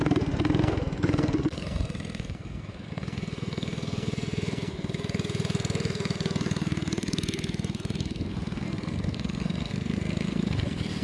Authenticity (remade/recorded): remade